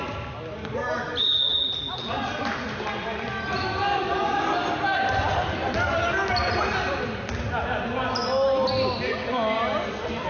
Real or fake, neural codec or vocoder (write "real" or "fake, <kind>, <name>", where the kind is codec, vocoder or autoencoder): real